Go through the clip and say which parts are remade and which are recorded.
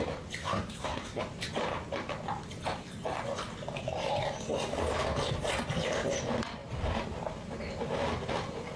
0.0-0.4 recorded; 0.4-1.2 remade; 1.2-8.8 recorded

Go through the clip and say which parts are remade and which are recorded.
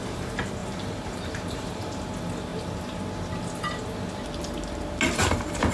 0.0-0.6 recorded; 0.6-2.1 remade; 2.1-2.5 recorded; 2.5-3.0 remade; 3.0-5.7 recorded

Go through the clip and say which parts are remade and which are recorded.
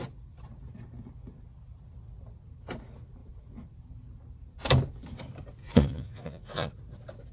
0.0-5.6 recorded; 5.6-6.7 remade; 6.7-7.3 recorded